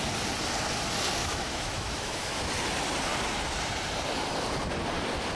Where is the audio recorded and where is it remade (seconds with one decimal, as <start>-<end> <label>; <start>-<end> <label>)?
0.0-1.2 recorded; 1.2-2.4 remade; 2.4-5.4 recorded